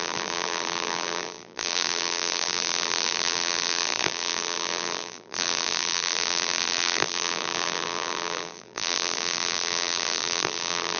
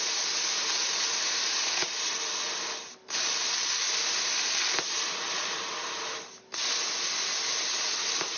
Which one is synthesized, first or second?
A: first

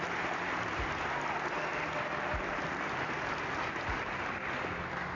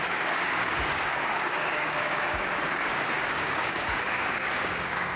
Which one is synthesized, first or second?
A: second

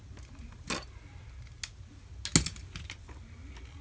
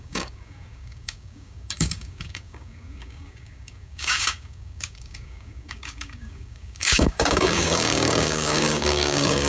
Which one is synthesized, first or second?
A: second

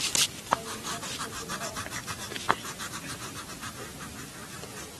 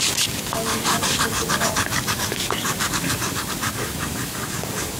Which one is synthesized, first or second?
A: second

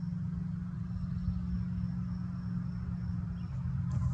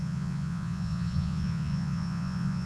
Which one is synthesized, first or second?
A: second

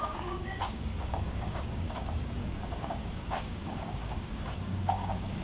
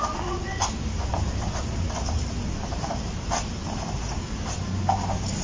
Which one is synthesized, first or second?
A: first